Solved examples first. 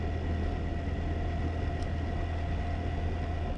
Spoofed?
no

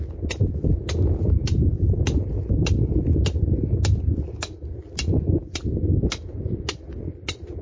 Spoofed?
no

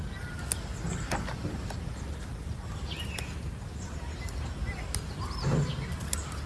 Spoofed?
no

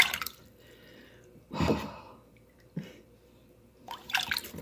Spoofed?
yes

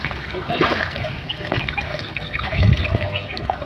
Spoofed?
yes